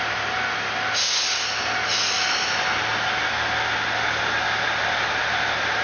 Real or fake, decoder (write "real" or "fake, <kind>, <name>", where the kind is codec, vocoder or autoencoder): real